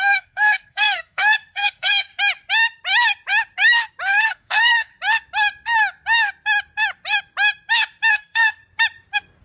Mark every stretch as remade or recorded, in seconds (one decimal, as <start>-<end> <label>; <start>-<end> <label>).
0.0-2.1 remade; 2.1-4.3 recorded; 4.3-4.9 remade; 4.9-8.1 recorded; 8.1-8.6 remade; 8.6-9.4 recorded